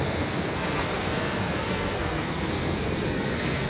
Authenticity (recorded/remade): remade